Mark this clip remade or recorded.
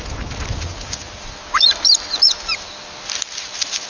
recorded